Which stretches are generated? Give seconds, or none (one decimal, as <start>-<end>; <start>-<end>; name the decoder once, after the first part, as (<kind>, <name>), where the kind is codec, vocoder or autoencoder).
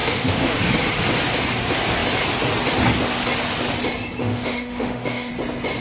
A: 0.0-0.6 (autoencoder, DAC-VAE); 4.2-5.3